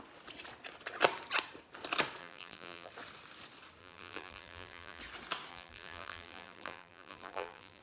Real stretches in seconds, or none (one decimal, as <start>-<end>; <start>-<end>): 0.0-2.2; 2.9-3.8; 5.0-5.5